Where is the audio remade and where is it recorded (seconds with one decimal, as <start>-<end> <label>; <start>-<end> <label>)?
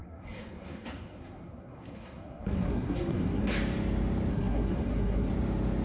0.0-3.5 remade; 3.5-4.3 recorded; 4.3-5.3 remade; 5.3-5.8 recorded